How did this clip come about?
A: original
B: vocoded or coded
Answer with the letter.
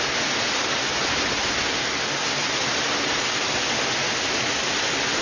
A